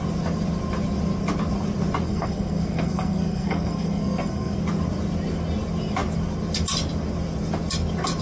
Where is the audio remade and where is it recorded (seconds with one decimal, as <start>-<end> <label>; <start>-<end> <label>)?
0.0-2.1 recorded; 2.1-4.6 remade; 4.6-8.2 recorded

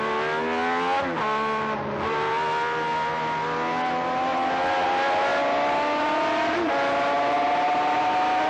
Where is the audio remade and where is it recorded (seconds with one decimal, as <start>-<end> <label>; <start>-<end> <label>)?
0.0-8.5 recorded

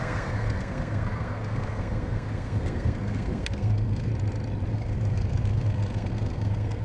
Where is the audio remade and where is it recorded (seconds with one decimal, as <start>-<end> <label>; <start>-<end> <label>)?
0.0-4.1 remade; 4.1-4.7 recorded; 4.7-6.8 remade

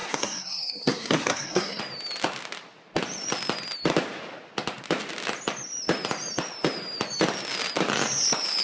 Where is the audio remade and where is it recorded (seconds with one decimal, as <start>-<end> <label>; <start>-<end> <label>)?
0.0-1.8 remade; 1.8-8.6 recorded

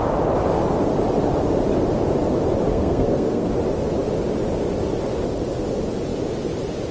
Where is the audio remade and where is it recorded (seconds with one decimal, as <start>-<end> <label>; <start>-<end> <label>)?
0.0-2.7 recorded; 2.7-3.5 remade; 3.5-6.9 recorded

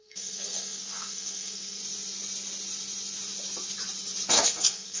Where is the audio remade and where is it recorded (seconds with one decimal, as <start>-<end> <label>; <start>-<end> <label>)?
0.0-1.8 remade; 1.8-4.3 recorded; 4.3-5.0 remade

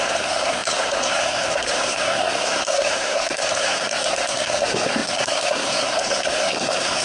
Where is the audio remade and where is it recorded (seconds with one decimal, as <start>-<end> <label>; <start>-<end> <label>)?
0.0-7.0 remade

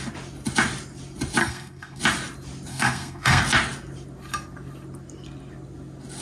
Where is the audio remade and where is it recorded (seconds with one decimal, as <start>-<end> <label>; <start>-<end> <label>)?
0.0-1.4 recorded; 1.4-2.0 remade; 2.0-2.7 recorded; 2.7-3.4 remade; 3.4-6.2 recorded